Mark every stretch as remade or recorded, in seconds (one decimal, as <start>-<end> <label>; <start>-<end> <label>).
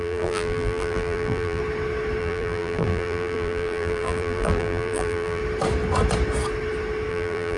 0.0-1.6 remade; 1.6-2.2 recorded; 2.2-5.4 remade; 5.4-7.1 recorded; 7.1-7.6 remade